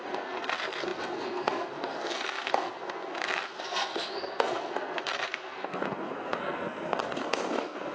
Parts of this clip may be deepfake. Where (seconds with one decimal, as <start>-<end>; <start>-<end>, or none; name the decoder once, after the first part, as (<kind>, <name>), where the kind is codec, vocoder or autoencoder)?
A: 0.0-7.9 (codec, SNAC)